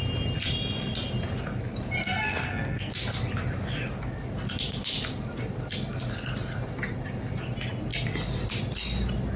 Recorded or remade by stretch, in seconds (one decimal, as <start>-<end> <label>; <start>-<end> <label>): 0.0-2.0 recorded; 2.0-2.9 remade; 2.9-9.4 recorded